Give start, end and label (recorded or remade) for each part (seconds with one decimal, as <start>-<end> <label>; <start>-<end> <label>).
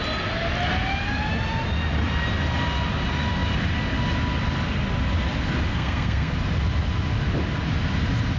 0.0-5.7 recorded; 5.7-6.3 remade; 6.3-8.4 recorded